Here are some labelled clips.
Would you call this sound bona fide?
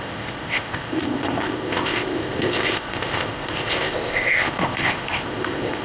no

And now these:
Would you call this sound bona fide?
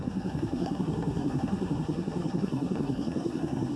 no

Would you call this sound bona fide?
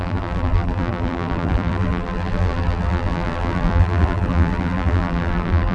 no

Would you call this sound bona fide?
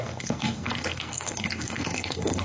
no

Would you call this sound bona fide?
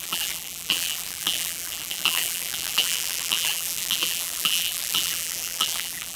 no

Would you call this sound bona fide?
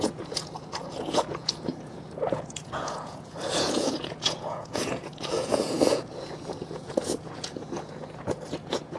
no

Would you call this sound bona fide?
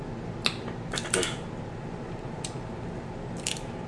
yes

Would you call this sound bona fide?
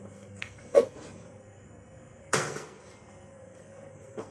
no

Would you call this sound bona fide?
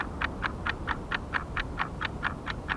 yes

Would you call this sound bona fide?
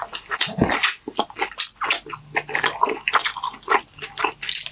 yes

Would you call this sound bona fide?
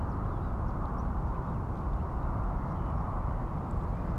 yes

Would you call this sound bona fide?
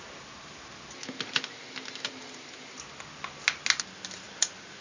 yes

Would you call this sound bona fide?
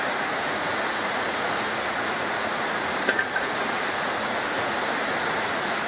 no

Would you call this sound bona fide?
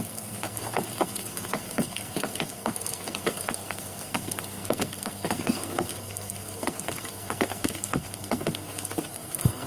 no